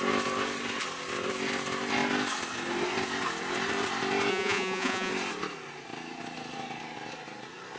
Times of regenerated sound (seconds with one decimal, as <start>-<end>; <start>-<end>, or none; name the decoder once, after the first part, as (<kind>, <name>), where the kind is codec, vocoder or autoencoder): 4.3-5.1 (vocoder, Vocos)